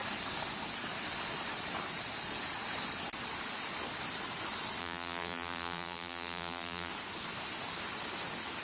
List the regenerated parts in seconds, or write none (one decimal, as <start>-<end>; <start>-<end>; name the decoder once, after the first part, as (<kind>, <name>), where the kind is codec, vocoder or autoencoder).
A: 4.8-6.9 (vocoder, BigVGAN v2)